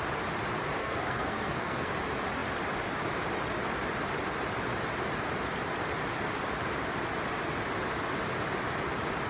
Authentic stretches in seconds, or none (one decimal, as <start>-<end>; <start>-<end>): 0.0-0.8; 1.9-9.3